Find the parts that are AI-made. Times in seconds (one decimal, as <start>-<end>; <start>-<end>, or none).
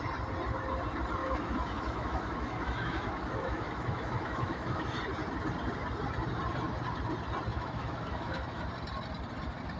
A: 1.2-5.0; 7.5-8.6